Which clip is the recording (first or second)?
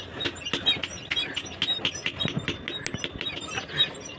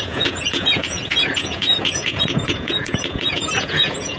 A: first